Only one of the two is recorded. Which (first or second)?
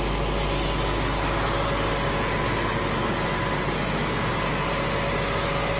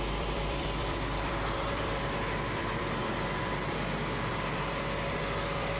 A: first